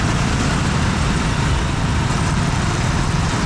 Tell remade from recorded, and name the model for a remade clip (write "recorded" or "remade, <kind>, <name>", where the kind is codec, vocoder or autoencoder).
remade, vocoder, BigVGAN v2